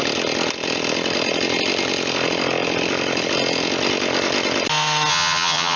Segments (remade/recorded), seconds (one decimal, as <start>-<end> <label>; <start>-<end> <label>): 0.0-5.1 recorded; 5.1-5.8 remade